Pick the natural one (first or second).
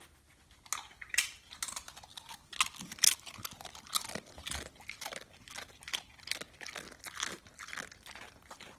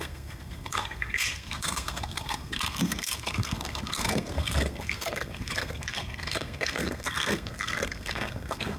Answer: first